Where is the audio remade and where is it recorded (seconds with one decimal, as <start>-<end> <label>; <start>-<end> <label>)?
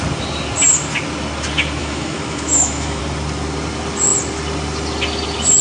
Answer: 0.0-1.8 recorded; 1.8-3.0 remade; 3.0-5.6 recorded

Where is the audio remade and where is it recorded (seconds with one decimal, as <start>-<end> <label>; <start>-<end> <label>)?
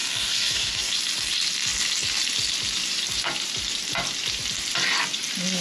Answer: 0.0-0.9 remade; 0.9-5.6 recorded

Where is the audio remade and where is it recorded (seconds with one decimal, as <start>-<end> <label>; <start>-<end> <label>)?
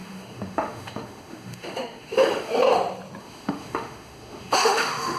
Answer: 0.0-2.5 remade; 2.5-3.2 recorded; 3.2-5.2 remade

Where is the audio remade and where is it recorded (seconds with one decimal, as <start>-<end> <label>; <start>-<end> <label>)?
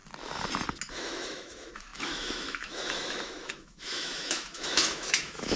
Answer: 0.0-0.9 recorded; 0.9-5.6 remade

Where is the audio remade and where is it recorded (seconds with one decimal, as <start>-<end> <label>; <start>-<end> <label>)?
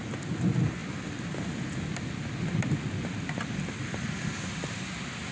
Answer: 0.0-5.3 recorded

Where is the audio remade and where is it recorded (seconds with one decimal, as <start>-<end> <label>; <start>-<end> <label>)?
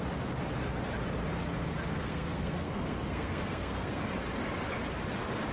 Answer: 0.0-1.9 recorded; 1.9-4.0 remade; 4.0-5.5 recorded